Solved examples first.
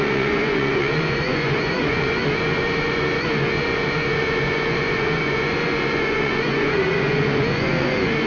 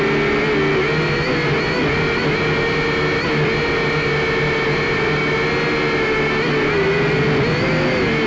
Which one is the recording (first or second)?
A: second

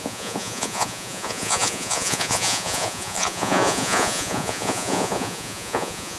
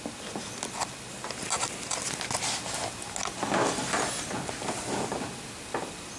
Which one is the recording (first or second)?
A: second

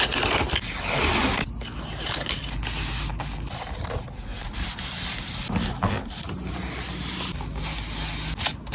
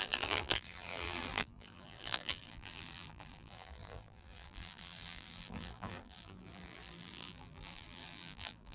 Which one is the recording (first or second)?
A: first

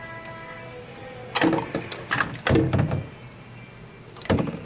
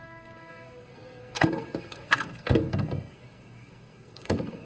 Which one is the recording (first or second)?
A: first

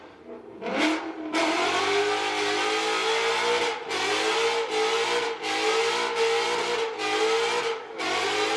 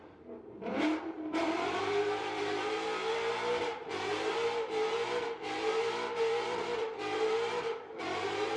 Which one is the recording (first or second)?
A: first